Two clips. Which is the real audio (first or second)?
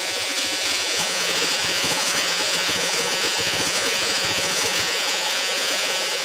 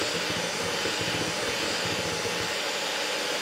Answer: second